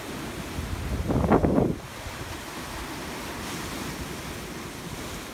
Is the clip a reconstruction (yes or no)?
no